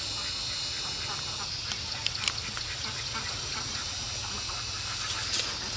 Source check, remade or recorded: recorded